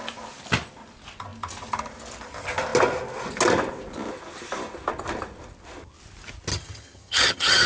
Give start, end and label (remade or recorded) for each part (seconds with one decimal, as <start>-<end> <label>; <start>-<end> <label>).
0.0-6.5 recorded; 6.5-7.7 remade

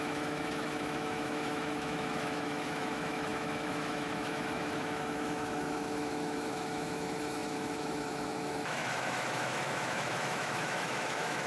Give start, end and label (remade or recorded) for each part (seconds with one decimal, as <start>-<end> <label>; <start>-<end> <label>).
0.0-11.5 remade

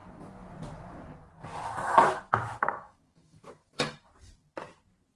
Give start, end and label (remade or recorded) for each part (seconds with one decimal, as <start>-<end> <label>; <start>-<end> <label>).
0.0-2.3 recorded; 2.3-3.6 remade; 3.6-5.2 recorded